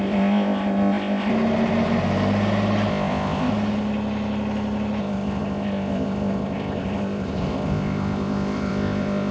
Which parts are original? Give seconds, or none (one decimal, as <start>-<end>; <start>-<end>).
1.3-2.9; 3.5-5.0